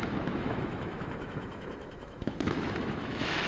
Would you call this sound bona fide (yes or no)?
no